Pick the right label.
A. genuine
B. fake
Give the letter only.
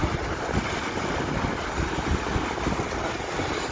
A